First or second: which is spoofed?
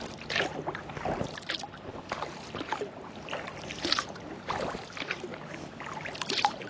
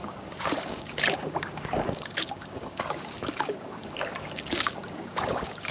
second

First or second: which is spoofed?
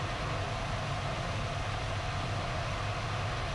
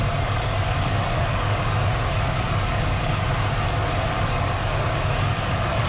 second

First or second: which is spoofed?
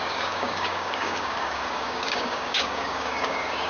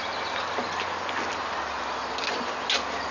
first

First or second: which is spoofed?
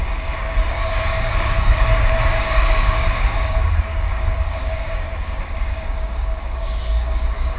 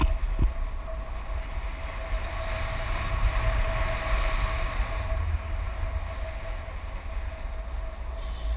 first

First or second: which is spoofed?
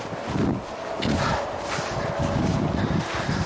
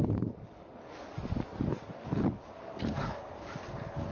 second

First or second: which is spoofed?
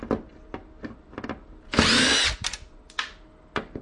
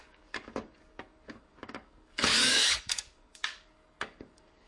second